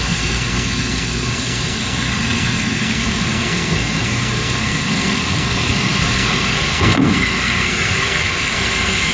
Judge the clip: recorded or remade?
remade